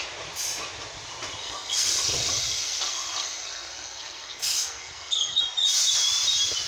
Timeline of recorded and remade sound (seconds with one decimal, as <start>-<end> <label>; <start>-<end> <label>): 0.0-1.4 recorded; 1.4-5.4 remade; 5.4-6.7 recorded